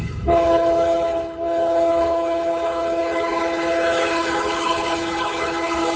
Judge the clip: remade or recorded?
remade